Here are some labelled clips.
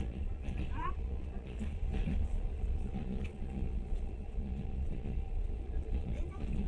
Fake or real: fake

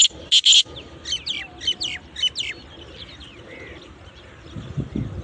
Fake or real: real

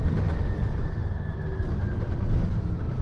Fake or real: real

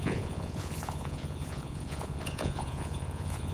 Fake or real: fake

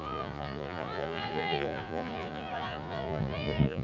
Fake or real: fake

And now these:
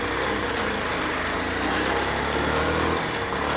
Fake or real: real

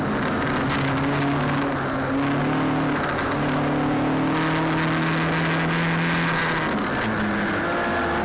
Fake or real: real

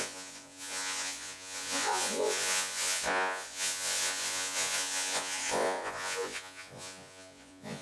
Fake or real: fake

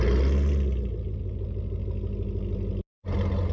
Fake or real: real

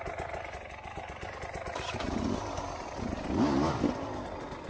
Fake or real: real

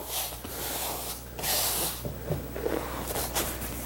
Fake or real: real